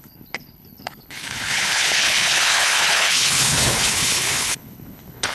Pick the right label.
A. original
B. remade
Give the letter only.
B